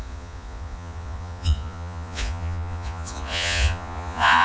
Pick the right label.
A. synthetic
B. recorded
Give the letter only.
A